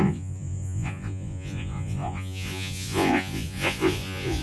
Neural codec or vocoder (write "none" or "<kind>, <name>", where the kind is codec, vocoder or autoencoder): vocoder, Vocos